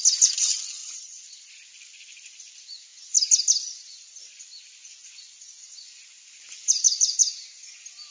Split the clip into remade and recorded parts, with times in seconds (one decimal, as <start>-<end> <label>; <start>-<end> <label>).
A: 0.0-0.8 recorded; 0.8-1.5 remade; 1.5-8.1 recorded

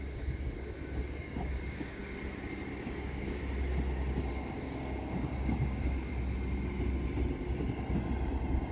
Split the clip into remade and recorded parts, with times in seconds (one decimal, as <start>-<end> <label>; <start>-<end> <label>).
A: 0.0-2.0 remade; 2.0-2.8 recorded; 2.8-3.4 remade; 3.4-4.3 recorded; 4.3-6.1 remade; 6.1-8.7 recorded

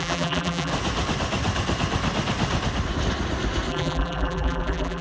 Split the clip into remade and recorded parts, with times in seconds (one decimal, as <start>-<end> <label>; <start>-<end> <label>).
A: 0.0-0.7 remade; 0.7-3.7 recorded; 3.7-5.0 remade

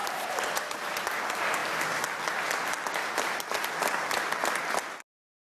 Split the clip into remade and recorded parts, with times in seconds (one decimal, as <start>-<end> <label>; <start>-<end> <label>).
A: 0.0-5.6 recorded

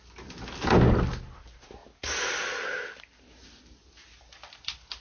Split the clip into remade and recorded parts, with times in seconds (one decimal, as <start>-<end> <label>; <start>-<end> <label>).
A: 0.0-5.0 recorded

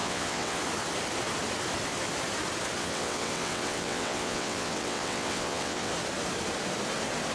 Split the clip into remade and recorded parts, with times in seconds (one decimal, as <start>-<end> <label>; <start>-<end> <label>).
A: 0.0-0.6 remade; 0.6-2.8 recorded; 2.8-5.9 remade; 5.9-7.3 recorded

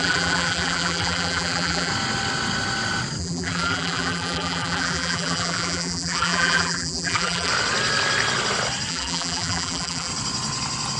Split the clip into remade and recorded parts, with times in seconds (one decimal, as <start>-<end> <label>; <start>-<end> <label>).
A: 0.0-1.9 remade; 1.9-3.2 recorded; 3.2-7.5 remade; 7.5-8.9 recorded; 8.9-10.1 remade; 10.1-11.0 recorded